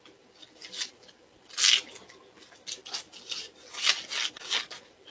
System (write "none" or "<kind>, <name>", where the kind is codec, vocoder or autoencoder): none